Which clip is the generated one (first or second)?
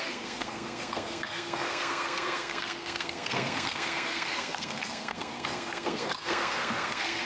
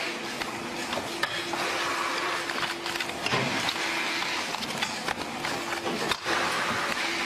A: first